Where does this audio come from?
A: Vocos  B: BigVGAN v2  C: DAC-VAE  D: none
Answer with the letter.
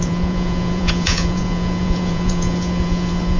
A